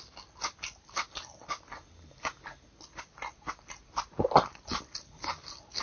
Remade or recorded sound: recorded